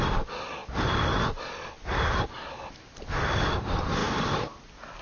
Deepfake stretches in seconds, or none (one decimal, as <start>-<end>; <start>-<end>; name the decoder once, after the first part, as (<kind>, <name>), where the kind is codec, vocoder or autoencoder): none